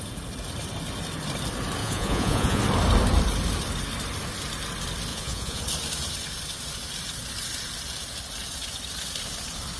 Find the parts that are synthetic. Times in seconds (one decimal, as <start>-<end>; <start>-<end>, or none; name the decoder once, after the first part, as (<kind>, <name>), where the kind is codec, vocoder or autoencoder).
1.8-2.6 (vocoder, Vocos); 5.1-5.6